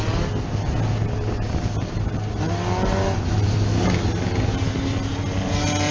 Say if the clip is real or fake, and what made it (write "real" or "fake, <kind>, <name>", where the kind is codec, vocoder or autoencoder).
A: real